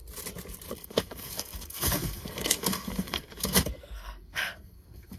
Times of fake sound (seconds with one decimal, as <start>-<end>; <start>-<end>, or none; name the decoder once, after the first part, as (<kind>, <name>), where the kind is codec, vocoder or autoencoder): 0.7-5.2 (codec, SNAC)